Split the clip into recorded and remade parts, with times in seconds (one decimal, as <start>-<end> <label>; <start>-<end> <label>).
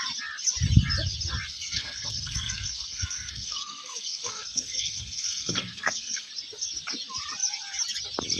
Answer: 0.0-1.5 recorded; 1.5-6.3 remade; 6.3-8.4 recorded